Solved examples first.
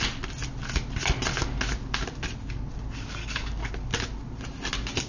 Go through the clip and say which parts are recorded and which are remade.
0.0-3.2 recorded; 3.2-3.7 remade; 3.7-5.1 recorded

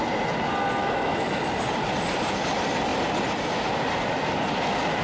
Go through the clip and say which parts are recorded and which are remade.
0.0-0.8 recorded; 0.8-1.4 remade; 1.4-5.0 recorded

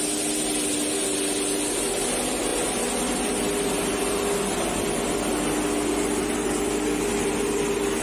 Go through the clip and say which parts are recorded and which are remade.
0.0-8.0 recorded